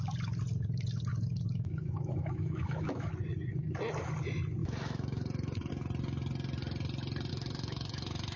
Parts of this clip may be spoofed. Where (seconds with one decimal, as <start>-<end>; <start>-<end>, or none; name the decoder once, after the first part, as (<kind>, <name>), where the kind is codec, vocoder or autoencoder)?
1.1-3.1 (autoencoder, DAC-VAE); 4.6-5.7; 7.3-8.4